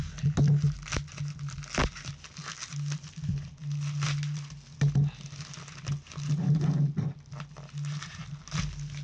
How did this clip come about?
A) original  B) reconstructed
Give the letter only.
A